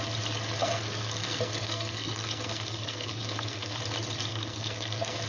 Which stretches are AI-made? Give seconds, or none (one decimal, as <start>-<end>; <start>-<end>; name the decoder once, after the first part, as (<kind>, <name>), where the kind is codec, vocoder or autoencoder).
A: 0.6-3.8 (codec, SNAC); 4.3-5.3